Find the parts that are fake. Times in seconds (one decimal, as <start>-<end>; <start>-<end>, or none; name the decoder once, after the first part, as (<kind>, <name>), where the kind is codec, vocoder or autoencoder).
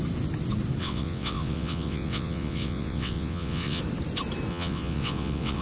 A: 0.8-3.8 (vocoder, WaveNeXt); 4.5-5.6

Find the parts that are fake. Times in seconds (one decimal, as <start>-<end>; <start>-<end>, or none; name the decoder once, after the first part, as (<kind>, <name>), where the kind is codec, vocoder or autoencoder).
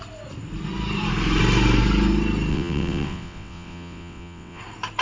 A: 2.5-4.6 (vocoder, WaveNeXt)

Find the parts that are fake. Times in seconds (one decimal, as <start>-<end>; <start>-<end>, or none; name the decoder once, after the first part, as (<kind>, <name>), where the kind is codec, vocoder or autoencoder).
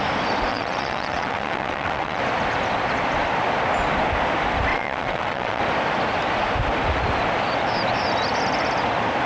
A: 0.5-2.2 (vocoder, WaveNeXt); 4.7-5.6